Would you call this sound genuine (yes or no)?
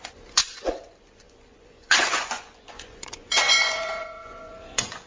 no